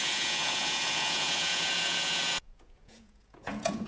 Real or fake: fake